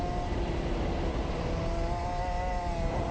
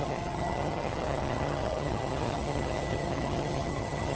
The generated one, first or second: second